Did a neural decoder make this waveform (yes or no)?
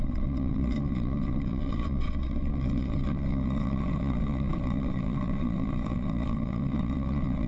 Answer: yes